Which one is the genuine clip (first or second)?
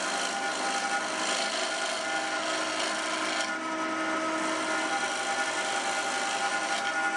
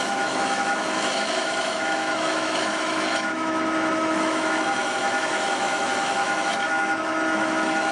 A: first